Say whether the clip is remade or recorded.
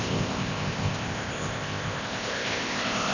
remade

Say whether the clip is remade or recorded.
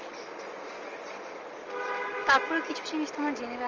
recorded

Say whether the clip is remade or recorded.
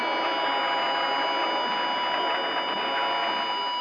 recorded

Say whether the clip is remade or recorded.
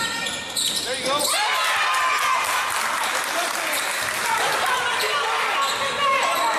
recorded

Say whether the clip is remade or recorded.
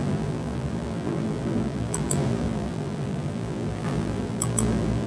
remade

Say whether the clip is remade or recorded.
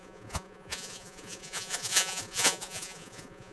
remade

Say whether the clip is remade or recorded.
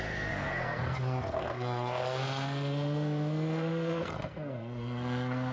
remade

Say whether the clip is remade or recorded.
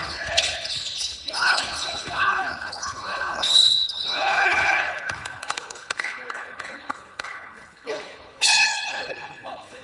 remade